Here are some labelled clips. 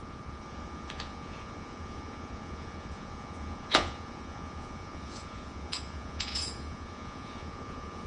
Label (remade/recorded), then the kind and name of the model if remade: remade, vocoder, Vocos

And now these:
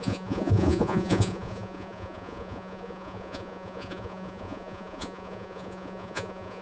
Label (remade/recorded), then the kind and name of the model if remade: remade, vocoder, Vocos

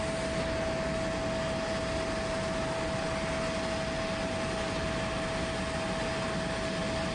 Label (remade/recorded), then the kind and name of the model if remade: recorded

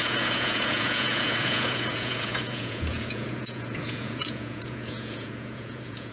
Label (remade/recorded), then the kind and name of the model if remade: remade, vocoder, Vocos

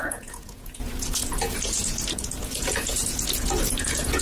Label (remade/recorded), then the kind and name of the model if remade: remade, vocoder, Vocos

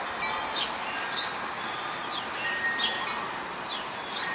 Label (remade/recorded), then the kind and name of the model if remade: recorded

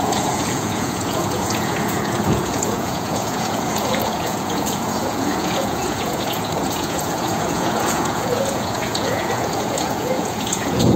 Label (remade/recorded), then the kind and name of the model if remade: remade, vocoder, Vocos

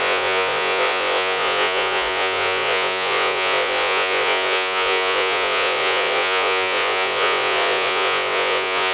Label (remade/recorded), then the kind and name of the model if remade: remade, vocoder, Vocos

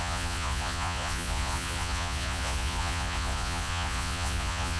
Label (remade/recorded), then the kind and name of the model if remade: remade, vocoder, Vocos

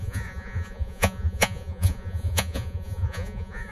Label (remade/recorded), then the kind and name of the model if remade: remade, vocoder, Vocos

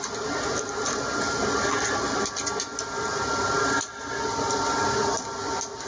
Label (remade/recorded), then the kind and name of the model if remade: recorded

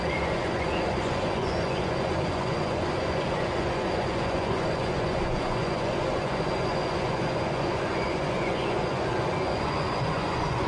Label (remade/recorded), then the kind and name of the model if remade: remade, vocoder, Vocos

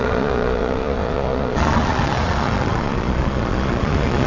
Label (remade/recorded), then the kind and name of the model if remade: remade, vocoder, Vocos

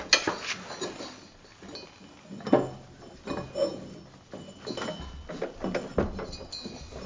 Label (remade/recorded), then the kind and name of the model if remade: recorded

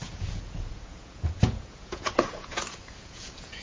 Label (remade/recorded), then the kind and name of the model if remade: remade, vocoder, Vocos